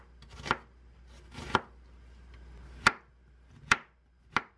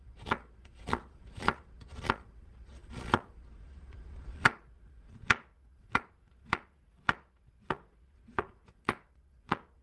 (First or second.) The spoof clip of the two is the second